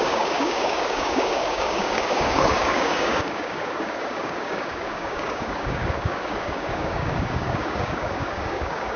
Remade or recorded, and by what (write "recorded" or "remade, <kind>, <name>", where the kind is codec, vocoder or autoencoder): remade, codec, DAC